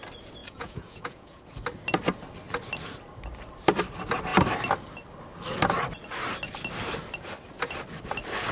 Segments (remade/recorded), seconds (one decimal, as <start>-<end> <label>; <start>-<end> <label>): 0.0-0.4 recorded; 0.4-1.4 remade; 1.4-8.5 recorded